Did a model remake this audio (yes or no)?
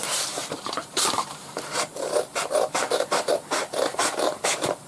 yes